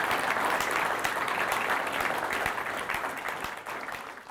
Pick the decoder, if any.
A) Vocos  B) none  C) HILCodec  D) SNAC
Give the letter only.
B